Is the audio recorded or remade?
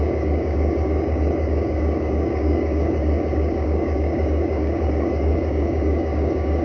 remade